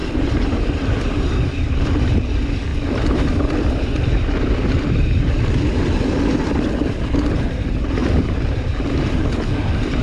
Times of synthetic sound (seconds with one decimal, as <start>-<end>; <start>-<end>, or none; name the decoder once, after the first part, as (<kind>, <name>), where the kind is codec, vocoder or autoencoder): 0.0-2.2 (vocoder, BigVGAN v2); 2.7-5.2